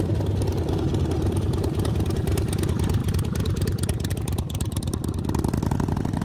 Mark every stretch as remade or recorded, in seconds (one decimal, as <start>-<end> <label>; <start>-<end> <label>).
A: 0.0-6.2 recorded